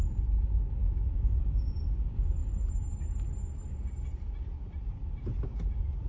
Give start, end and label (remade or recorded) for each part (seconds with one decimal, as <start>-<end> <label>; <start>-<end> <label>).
0.0-0.8 recorded; 0.8-1.4 remade; 1.4-6.1 recorded